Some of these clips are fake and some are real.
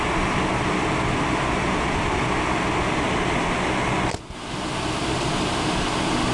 real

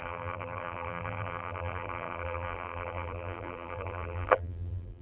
fake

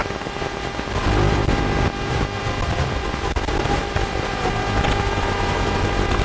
real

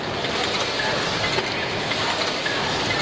real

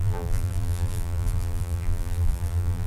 fake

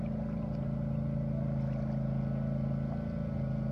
real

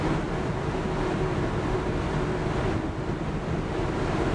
real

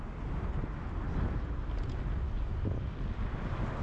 real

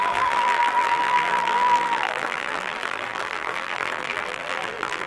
fake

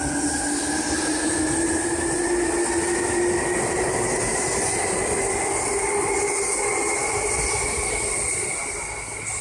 real